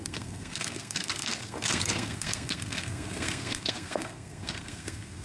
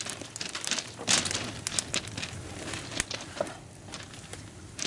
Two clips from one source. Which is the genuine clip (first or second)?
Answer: second